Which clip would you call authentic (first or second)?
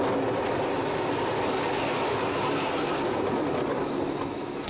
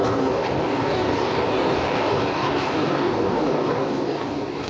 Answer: first